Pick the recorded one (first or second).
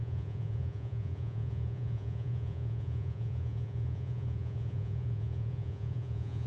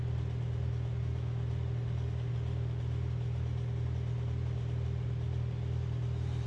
second